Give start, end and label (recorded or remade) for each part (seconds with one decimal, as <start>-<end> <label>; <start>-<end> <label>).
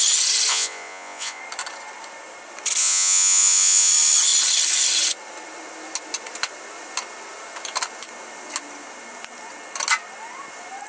0.0-0.5 recorded; 0.5-1.4 remade; 1.4-2.8 recorded; 2.8-3.9 remade; 3.9-10.9 recorded